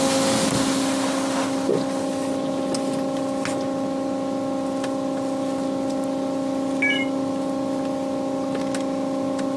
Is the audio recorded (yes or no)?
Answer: yes